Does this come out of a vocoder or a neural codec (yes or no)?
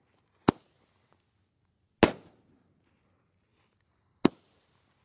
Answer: no